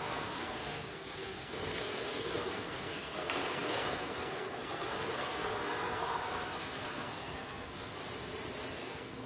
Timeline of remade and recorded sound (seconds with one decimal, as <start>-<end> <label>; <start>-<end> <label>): 0.0-8.0 remade; 8.0-8.7 recorded; 8.7-9.3 remade